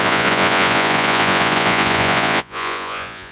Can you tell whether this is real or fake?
fake